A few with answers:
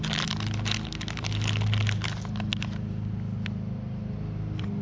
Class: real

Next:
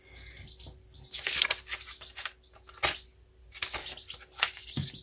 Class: real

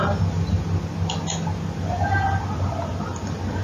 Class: real